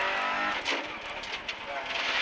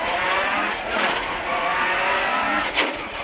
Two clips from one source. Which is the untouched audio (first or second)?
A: first